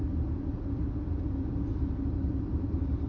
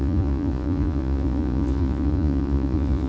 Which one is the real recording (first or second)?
first